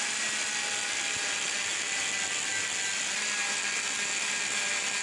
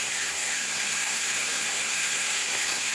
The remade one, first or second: second